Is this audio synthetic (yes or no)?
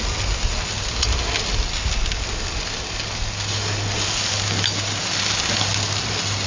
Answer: no